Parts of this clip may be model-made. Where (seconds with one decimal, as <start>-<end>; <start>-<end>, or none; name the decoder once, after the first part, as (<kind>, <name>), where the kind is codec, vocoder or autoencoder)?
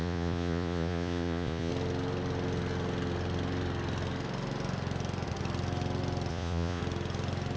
0.0-1.7 (vocoder, Vocos); 6.3-6.8